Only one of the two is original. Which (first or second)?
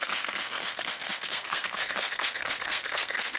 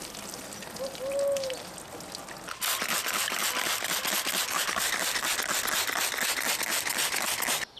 second